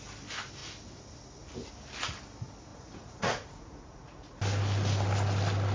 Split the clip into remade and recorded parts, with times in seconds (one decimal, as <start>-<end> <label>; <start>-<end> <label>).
0.0-2.7 recorded; 2.7-4.4 remade; 4.4-5.7 recorded